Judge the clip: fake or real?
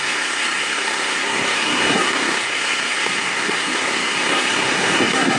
fake